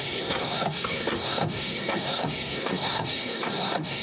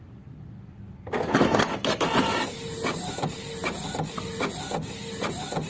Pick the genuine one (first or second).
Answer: second